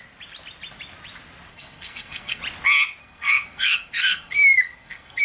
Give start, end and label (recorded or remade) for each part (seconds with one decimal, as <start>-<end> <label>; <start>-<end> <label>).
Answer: 0.0-1.5 recorded; 1.5-2.4 remade; 2.4-3.0 recorded; 3.0-5.2 remade